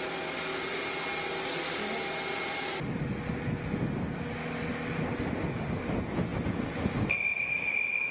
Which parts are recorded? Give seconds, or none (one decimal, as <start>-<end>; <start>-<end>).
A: 0.0-8.1